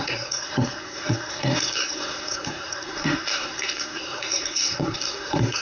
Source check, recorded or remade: remade